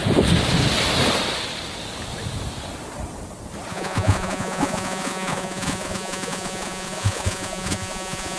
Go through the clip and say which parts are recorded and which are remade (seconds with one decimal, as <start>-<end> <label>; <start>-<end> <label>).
0.0-3.7 recorded; 3.7-8.4 remade